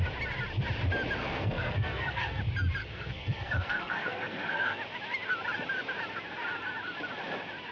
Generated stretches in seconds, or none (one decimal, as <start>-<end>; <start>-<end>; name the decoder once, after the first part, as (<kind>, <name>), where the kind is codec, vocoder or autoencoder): 1.2-2.4 (codec, SNAC); 2.8-4.8